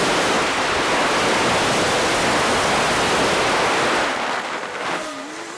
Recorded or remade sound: recorded